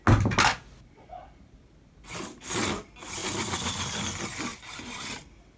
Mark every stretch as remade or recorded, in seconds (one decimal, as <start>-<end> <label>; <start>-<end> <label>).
0.0-3.2 recorded; 3.2-4.0 remade; 4.0-4.5 recorded; 4.5-5.6 remade